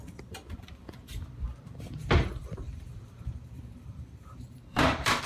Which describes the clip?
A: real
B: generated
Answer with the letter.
B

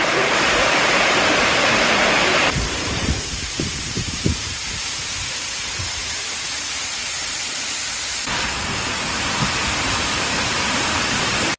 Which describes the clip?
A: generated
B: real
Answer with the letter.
A